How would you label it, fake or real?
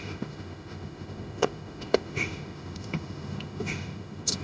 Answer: fake